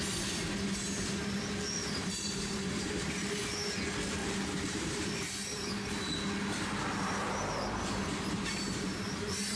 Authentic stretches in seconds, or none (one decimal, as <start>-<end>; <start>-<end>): 0.0-1.8; 3.0-4.2; 5.7-6.9